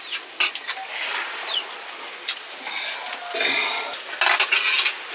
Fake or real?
real